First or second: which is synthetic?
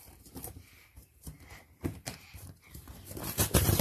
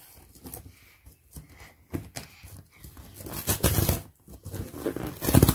first